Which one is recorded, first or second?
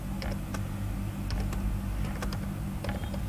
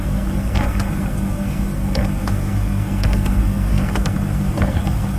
first